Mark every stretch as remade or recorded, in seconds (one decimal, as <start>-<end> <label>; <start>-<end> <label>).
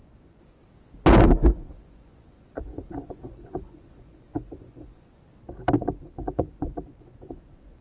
0.0-0.6 remade; 0.6-1.2 recorded; 1.2-5.3 remade; 5.3-5.8 recorded; 5.8-7.8 remade